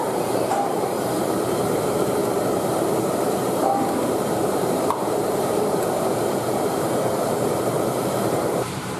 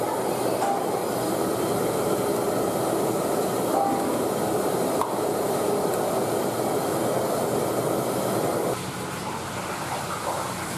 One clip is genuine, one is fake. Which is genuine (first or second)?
second